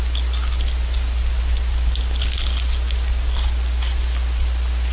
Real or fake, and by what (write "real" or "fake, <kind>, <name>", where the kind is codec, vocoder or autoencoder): real